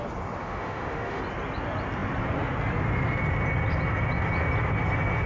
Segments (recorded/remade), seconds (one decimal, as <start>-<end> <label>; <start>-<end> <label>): 0.0-0.4 recorded; 0.4-1.2 remade; 1.2-5.3 recorded